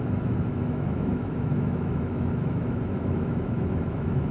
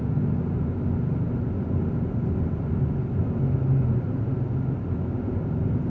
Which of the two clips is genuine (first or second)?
second